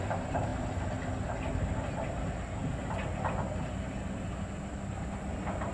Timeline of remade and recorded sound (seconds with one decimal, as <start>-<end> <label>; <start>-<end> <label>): 0.0-5.7 recorded